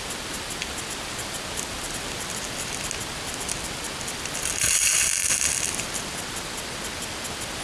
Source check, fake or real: real